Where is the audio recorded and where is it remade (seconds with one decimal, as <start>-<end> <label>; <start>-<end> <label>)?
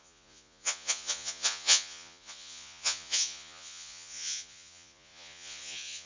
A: 0.0-6.1 remade